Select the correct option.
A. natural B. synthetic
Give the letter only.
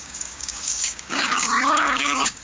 B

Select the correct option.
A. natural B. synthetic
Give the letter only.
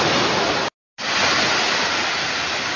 A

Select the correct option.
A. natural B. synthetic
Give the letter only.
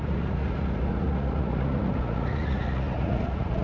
B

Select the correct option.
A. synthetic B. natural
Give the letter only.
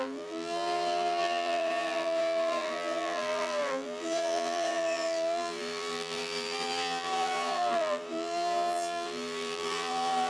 A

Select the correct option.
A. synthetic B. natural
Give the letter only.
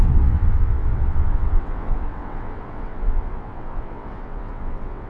A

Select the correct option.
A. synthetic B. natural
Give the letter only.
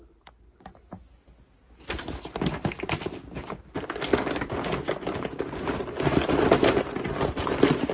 B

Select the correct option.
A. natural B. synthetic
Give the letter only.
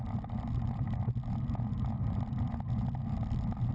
A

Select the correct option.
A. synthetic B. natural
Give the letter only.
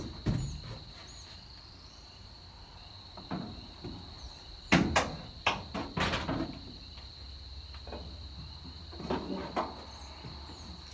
B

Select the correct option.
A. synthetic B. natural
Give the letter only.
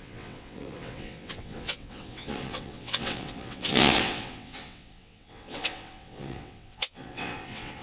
A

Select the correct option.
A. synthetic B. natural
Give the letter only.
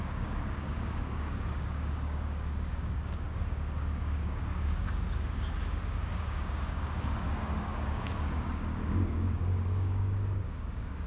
A